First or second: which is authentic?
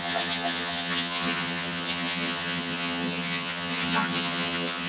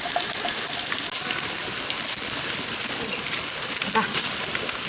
second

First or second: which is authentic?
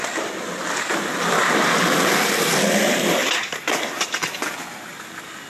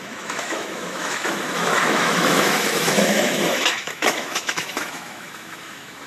first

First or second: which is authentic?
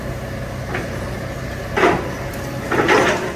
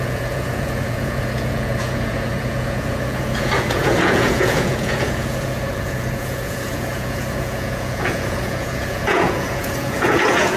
first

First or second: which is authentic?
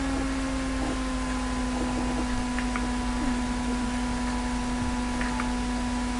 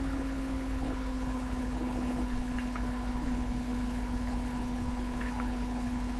first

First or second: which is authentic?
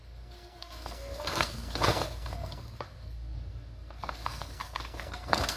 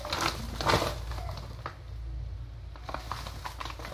second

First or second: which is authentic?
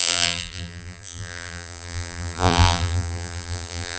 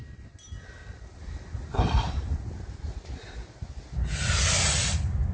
second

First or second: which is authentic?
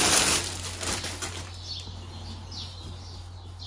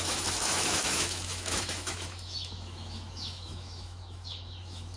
first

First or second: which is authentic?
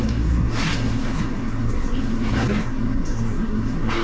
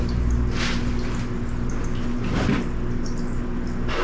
second